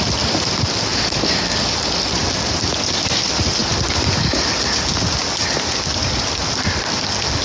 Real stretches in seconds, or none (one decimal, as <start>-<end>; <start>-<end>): 0.0-0.9; 2.5-7.4